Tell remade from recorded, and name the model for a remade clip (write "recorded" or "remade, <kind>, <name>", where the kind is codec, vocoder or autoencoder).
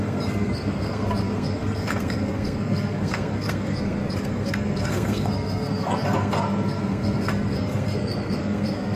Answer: remade, codec, SNAC